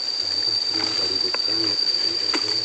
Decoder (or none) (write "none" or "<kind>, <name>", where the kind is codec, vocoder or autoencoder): vocoder, BigVGAN v2